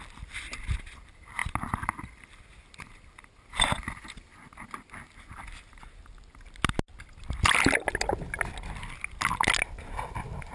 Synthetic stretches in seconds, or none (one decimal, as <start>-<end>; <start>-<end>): none